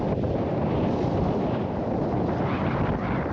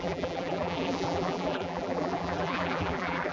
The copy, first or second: second